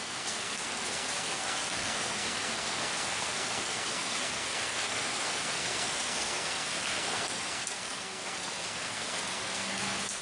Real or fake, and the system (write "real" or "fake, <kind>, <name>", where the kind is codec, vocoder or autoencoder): fake, codec, SNAC